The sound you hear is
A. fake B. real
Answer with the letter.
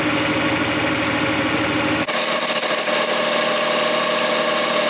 B